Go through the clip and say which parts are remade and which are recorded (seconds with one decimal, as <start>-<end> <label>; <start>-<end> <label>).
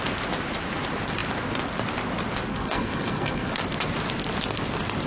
0.0-2.5 recorded; 2.5-3.5 remade; 3.5-5.1 recorded